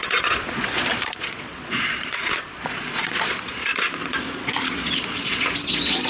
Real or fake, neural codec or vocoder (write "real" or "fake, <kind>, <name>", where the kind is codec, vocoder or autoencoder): fake, vocoder, Vocos